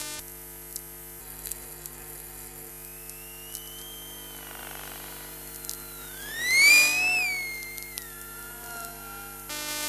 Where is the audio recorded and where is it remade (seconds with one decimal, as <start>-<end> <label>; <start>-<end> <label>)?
0.0-1.2 recorded; 1.2-2.7 remade; 2.7-9.9 recorded